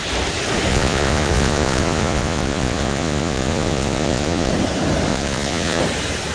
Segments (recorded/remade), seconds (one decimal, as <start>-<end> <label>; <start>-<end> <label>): 0.0-0.7 recorded; 0.7-4.5 remade; 4.5-5.1 recorded; 5.1-5.8 remade; 5.8-6.3 recorded